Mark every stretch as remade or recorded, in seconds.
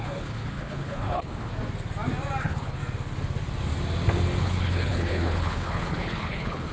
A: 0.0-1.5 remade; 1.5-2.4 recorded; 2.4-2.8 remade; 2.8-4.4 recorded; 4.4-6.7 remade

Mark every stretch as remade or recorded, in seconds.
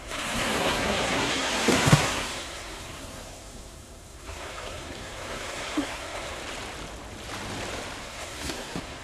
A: 0.0-6.4 remade; 6.4-8.0 recorded; 8.0-9.0 remade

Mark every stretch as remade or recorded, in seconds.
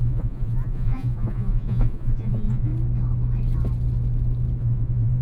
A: 0.0-2.7 remade; 2.7-4.6 recorded; 4.6-5.2 remade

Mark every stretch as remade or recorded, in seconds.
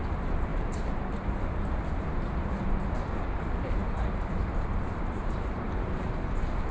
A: 0.0-6.7 recorded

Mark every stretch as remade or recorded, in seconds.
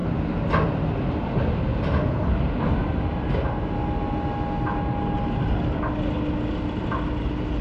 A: 0.0-7.6 recorded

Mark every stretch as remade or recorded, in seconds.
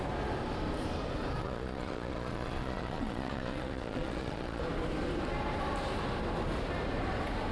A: 0.0-1.4 recorded; 1.4-4.6 remade; 4.6-7.5 recorded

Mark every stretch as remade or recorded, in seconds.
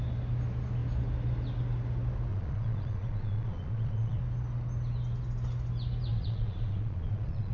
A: 0.0-2.3 recorded; 2.3-4.2 remade; 4.2-6.1 recorded; 6.1-7.5 remade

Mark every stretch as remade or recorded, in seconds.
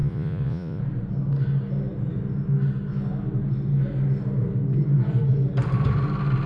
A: 0.0-0.8 remade; 0.8-6.5 recorded